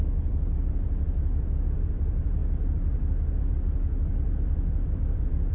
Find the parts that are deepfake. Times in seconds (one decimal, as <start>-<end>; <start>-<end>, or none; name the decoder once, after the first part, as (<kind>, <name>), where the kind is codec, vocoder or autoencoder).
0.0-5.5 (vocoder, BigVGAN v2)

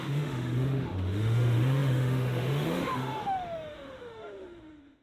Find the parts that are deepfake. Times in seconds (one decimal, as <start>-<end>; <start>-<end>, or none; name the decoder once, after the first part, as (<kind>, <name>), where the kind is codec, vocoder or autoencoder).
0.0-5.0 (autoencoder, DAC-VAE)

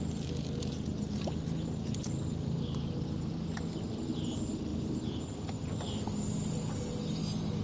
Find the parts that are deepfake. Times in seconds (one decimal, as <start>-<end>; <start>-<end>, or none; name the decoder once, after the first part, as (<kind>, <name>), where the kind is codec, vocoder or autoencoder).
none

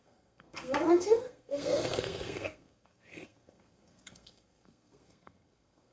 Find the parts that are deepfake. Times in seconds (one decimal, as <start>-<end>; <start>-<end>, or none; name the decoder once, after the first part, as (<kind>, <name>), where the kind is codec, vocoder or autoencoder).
0.0-5.9 (codec, SNAC)

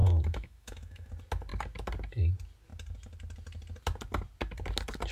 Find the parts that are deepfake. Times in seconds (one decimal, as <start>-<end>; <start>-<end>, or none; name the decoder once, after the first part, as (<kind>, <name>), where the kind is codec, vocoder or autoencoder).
0.0-1.1 (autoencoder, DAC-VAE)

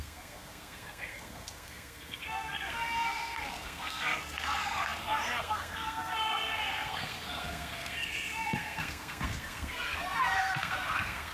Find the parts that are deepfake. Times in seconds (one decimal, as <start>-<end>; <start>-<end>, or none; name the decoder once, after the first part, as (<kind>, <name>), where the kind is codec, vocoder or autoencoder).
0.0-11.3 (codec, SNAC)